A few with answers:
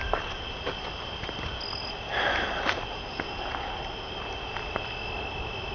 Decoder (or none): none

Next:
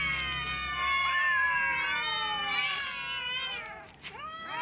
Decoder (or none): none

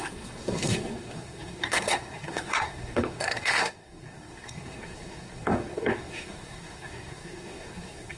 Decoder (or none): codec, SNAC